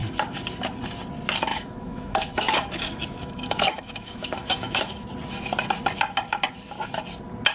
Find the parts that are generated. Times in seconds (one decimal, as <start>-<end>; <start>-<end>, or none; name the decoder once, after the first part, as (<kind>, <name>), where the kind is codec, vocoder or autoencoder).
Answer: 1.5-5.1 (autoencoder, DAC-VAE)